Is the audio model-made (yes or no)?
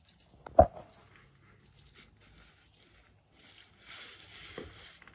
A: no